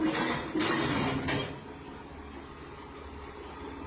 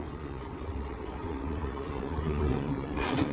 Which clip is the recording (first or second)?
first